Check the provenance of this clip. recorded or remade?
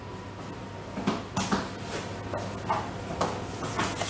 recorded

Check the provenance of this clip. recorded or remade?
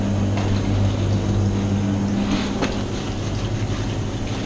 recorded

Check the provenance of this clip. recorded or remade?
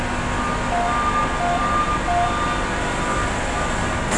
recorded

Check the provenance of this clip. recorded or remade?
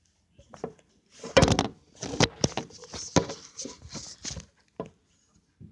recorded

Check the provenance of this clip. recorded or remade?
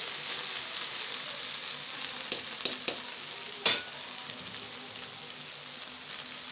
recorded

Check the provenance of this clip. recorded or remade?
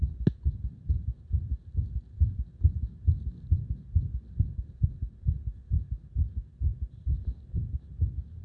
recorded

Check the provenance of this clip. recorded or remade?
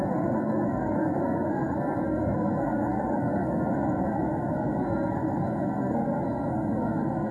remade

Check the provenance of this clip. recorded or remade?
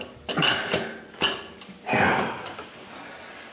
recorded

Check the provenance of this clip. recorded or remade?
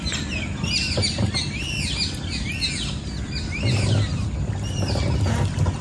recorded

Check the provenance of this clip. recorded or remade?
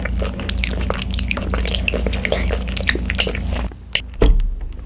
recorded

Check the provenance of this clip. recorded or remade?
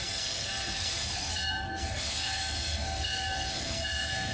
remade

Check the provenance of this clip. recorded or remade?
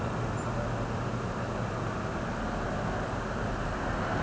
recorded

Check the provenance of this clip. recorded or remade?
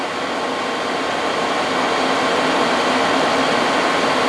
recorded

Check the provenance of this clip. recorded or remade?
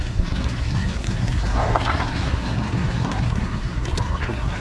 remade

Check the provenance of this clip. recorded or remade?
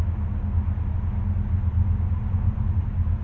recorded